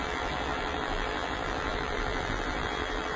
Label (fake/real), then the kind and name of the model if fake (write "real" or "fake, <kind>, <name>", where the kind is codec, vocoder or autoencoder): fake, vocoder, BigVGAN v2